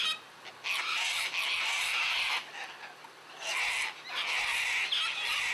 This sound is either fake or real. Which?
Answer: real